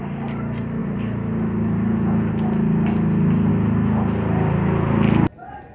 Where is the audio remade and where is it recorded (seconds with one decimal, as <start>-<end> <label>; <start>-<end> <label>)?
0.0-5.7 recorded